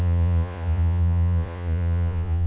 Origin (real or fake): fake